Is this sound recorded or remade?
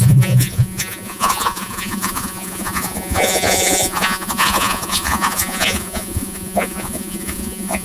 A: remade